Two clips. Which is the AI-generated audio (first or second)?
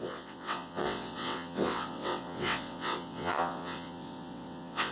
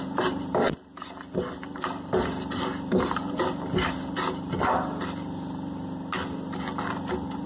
first